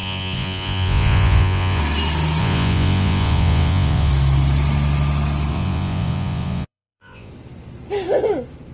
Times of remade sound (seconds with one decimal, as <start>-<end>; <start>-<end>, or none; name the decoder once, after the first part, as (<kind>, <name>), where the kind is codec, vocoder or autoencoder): 0.0-1.8 (vocoder, Vocos); 2.4-4.1; 5.5-7.3